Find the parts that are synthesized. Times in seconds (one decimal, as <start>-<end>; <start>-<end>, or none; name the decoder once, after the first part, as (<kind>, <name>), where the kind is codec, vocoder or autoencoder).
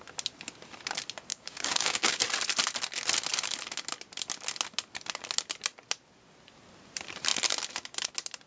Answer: 1.3-2.2 (codec, DAC)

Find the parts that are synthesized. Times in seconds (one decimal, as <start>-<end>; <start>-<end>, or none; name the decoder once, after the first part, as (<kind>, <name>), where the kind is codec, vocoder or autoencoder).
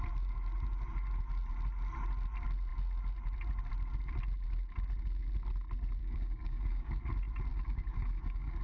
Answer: 6.0-7.0 (codec, DAC); 7.5-8.6